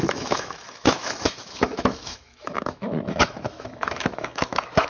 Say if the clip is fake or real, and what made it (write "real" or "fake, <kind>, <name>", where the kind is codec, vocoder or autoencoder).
fake, autoencoder, DAC-VAE